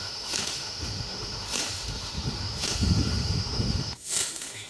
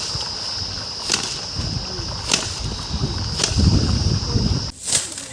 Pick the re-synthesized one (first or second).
first